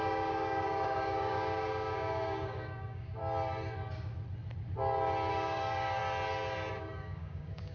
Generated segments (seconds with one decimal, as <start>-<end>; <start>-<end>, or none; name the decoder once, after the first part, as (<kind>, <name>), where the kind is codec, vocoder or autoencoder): 0.0-3.2 (codec, DAC); 5.3-6.0; 6.7-7.7